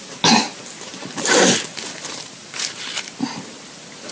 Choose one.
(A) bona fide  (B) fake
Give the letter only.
A